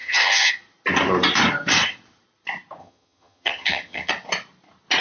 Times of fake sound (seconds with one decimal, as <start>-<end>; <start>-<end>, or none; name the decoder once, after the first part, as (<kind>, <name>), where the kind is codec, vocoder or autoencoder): 0.0-0.5 (vocoder, HiFi-GAN); 2.8-4.1